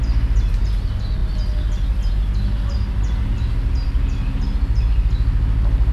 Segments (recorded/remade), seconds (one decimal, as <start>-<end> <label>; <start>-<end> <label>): 0.0-5.9 recorded